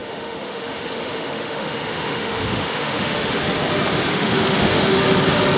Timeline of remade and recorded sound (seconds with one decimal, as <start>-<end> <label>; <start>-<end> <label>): 0.0-3.4 remade; 3.4-4.1 recorded; 4.1-5.0 remade; 5.0-5.6 recorded

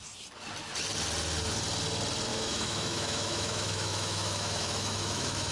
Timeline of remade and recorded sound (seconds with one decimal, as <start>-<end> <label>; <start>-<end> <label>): 0.0-2.3 recorded; 2.3-5.5 remade

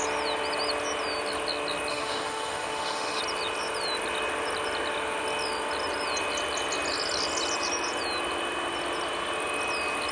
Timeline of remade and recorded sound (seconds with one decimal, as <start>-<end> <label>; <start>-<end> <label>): 0.0-1.9 recorded; 1.9-3.2 remade; 3.2-10.1 recorded

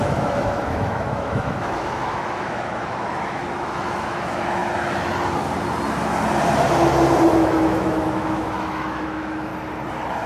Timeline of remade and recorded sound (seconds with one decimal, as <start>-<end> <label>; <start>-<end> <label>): 0.0-4.6 remade; 4.6-7.3 recorded; 7.3-9.5 remade; 9.5-10.3 recorded